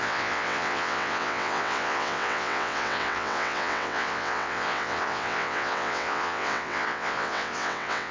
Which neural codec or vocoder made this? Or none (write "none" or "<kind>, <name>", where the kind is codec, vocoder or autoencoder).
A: vocoder, WaveNeXt